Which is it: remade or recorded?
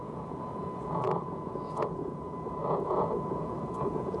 remade